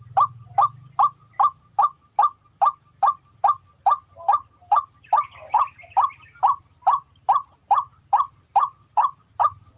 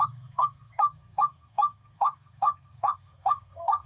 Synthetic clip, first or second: second